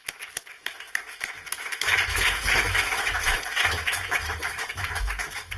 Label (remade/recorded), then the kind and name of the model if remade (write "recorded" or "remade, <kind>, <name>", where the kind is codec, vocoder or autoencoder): remade, autoencoder, DAC-VAE